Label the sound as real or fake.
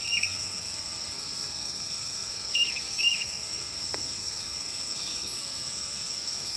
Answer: fake